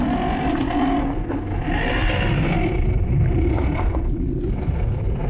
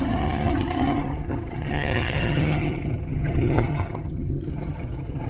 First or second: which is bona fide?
first